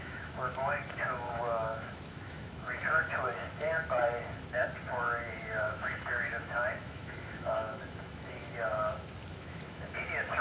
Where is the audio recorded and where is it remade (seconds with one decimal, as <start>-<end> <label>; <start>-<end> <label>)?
0.0-3.8 remade; 3.8-5.4 recorded; 5.4-8.7 remade; 8.7-9.3 recorded; 9.3-10.4 remade